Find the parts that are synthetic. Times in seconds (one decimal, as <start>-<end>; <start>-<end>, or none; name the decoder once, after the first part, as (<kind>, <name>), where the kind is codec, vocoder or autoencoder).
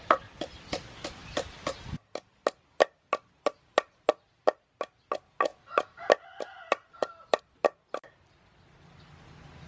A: none